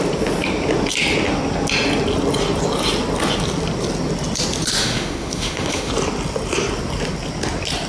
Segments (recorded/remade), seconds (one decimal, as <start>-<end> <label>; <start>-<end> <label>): 0.0-4.8 recorded; 4.8-5.9 remade; 5.9-7.9 recorded